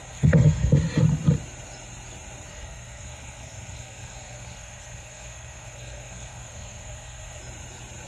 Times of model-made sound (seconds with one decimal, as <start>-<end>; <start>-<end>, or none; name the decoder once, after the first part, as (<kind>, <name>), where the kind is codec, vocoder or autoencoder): 0.0-0.7 (codec, SNAC); 2.5-7.4